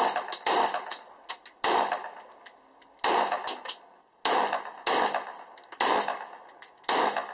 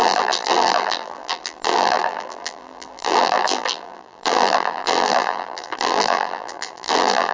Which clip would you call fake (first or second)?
second